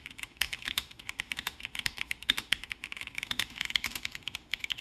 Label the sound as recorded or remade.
remade